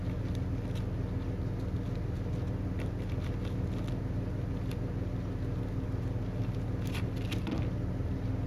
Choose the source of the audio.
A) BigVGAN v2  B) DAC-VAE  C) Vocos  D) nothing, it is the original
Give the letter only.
D